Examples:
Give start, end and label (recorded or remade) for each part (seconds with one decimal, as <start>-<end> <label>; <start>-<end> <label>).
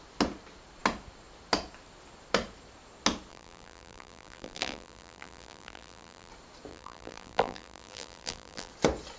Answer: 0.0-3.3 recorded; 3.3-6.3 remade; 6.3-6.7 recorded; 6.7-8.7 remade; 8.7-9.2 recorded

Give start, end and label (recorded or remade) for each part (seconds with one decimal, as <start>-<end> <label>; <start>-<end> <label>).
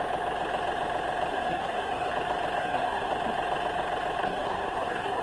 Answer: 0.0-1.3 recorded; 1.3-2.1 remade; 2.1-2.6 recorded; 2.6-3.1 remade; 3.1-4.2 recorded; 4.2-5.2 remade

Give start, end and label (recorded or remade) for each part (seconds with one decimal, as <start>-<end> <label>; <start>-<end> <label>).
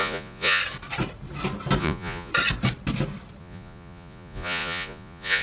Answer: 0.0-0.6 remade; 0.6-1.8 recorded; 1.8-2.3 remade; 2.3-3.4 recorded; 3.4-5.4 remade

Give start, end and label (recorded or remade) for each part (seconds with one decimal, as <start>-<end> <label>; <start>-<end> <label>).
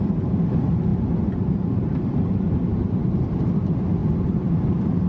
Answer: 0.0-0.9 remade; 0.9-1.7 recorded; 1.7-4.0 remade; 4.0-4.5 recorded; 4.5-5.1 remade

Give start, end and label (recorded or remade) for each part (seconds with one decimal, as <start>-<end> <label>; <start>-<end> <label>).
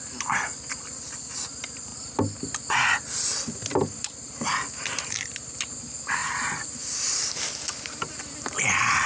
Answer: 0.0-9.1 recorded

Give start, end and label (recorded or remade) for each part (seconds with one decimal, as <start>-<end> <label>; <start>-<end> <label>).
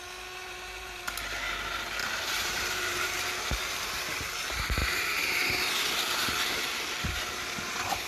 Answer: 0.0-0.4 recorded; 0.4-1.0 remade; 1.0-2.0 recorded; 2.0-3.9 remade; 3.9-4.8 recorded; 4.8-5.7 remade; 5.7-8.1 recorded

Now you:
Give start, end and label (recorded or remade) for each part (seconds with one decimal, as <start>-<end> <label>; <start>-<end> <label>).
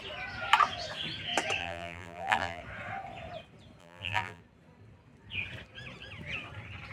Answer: 0.0-1.6 recorded; 1.6-2.6 remade; 2.6-3.8 recorded; 3.8-4.4 remade; 4.4-6.9 recorded